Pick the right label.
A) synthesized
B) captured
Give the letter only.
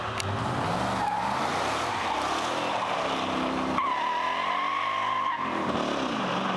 B